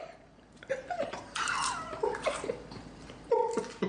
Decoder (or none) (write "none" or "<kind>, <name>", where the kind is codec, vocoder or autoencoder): vocoder, BigVGAN v2